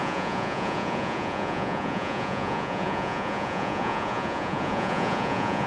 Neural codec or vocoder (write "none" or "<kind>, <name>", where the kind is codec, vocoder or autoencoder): vocoder, Vocos